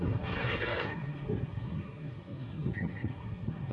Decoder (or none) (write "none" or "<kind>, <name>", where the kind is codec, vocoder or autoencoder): codec, SNAC